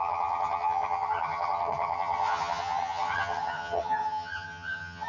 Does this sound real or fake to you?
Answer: fake